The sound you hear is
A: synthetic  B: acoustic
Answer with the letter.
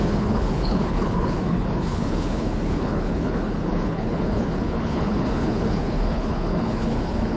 A